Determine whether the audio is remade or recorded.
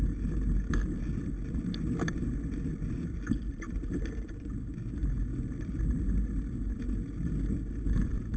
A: recorded